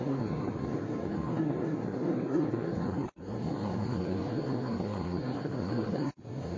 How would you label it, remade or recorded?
remade